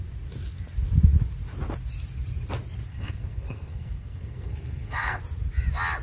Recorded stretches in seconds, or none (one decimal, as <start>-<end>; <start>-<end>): 0.0-2.9; 5.2-6.0